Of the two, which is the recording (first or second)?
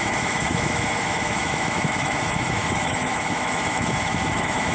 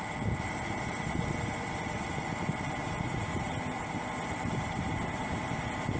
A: second